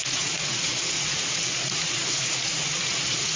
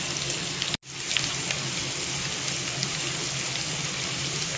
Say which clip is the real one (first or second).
second